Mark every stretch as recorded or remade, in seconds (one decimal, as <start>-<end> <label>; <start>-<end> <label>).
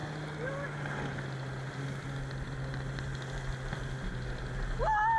0.0-5.2 recorded